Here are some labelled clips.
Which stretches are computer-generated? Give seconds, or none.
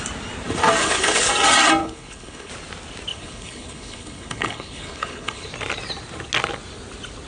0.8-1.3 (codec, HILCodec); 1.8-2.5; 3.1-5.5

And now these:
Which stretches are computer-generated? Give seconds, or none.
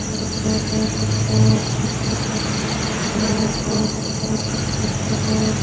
3.0-3.8 (vocoder, Vocos)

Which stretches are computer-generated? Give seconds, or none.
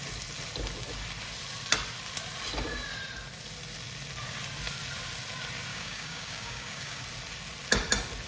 5.7-7.0 (codec, DAC)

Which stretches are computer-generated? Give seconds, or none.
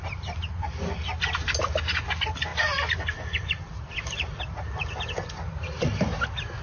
0.0-0.6 (vocoder, BigVGAN v2); 2.5-4.4